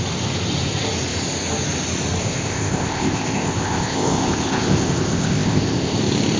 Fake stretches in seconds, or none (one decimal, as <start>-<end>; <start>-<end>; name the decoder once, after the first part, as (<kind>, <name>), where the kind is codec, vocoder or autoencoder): 2.2-6.0 (codec, ZipCodec)